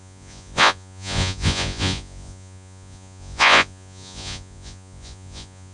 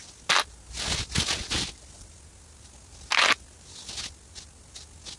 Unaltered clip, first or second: second